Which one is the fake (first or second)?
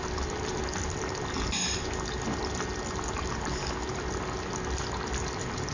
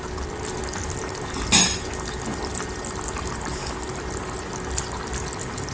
first